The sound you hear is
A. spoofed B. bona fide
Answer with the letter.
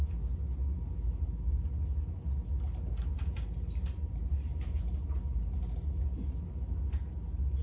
B